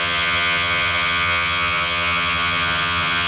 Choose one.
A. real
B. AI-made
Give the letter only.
B